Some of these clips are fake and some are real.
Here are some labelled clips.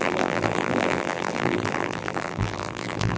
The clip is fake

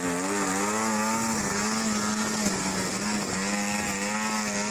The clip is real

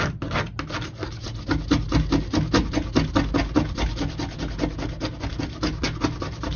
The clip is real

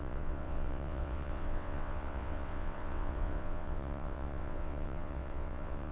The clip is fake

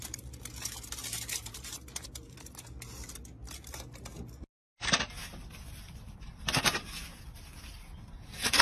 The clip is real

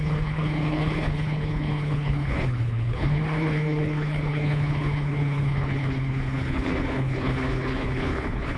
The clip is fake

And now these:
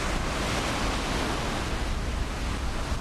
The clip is real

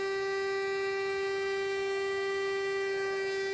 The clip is real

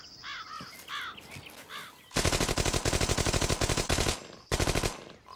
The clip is real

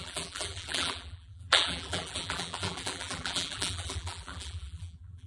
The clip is fake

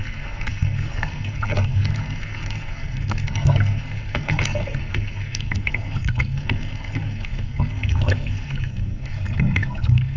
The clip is fake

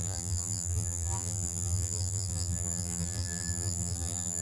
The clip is fake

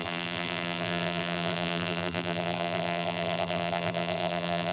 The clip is fake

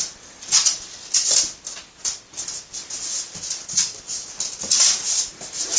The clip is real